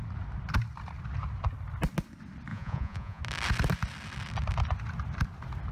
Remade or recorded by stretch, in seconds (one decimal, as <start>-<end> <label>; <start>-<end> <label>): 0.0-2.5 recorded; 2.5-3.2 remade; 3.2-5.7 recorded